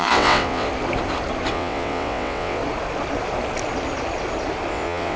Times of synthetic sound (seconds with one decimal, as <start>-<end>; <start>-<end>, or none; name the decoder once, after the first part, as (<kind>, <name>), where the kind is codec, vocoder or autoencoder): 0.0-0.7 (vocoder, WaveNeXt); 1.5-2.6; 4.7-5.2